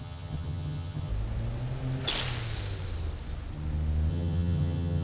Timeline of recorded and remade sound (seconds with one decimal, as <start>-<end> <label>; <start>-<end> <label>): 0.0-1.1 remade; 1.1-4.1 recorded; 4.1-5.0 remade